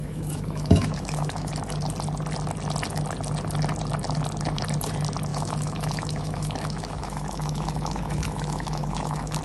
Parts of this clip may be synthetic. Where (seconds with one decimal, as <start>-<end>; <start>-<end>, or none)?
0.0-1.5; 5.3-9.4